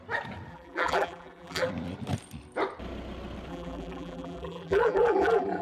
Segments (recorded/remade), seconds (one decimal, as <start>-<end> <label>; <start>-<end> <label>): 0.0-0.5 recorded; 0.5-1.7 remade; 1.7-3.5 recorded; 3.5-5.6 remade